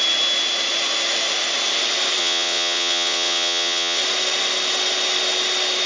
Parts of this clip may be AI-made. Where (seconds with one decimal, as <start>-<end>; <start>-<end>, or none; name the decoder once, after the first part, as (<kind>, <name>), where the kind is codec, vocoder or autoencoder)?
2.2-4.0 (vocoder, WaveNeXt)